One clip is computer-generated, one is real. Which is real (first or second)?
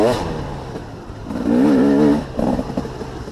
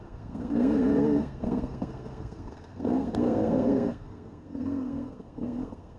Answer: first